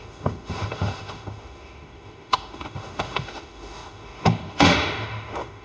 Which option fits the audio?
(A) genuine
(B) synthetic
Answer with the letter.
B